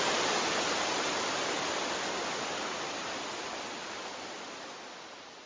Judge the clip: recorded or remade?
recorded